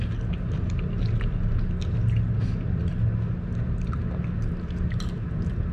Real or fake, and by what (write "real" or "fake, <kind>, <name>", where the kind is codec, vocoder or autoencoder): real